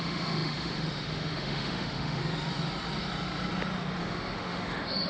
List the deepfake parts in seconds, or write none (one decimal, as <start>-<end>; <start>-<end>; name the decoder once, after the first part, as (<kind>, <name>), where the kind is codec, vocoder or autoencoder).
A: 0.0-2.2 (autoencoder, DAC-VAE); 4.0-5.1